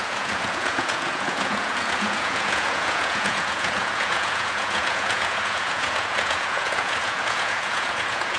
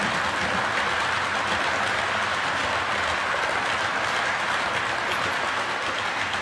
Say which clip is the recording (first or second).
second